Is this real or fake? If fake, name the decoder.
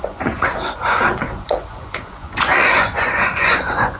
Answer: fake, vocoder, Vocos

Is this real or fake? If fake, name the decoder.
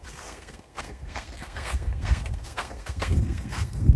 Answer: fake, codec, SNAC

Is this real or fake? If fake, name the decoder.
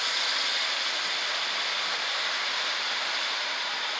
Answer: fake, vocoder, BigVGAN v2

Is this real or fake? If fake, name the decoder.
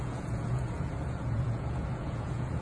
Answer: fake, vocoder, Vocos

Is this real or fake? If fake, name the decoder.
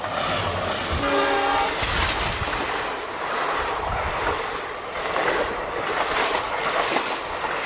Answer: real